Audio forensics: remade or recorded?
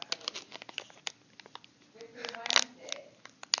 recorded